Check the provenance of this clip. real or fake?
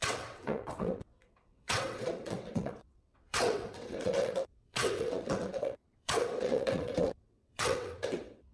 fake